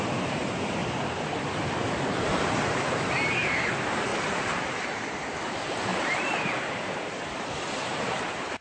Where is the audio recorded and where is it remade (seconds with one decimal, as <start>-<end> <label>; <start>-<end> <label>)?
0.0-0.8 remade; 0.8-1.4 recorded; 1.4-4.1 remade; 4.1-5.3 recorded; 5.3-8.6 remade